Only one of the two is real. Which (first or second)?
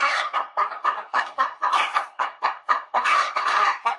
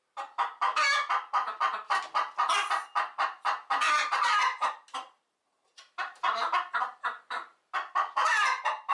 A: second